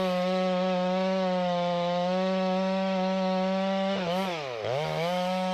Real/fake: fake